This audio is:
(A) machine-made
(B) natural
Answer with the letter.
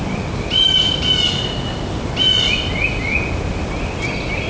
B